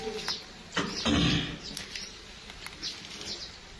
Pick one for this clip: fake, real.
real